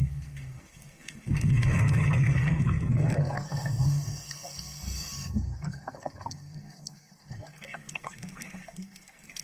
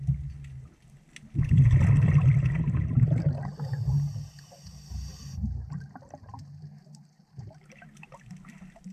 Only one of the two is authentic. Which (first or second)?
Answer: second